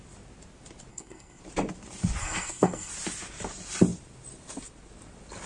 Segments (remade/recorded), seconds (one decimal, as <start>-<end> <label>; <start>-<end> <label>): 0.0-0.9 recorded; 0.9-1.4 remade; 1.4-2.2 recorded; 2.2-2.9 remade; 2.9-5.5 recorded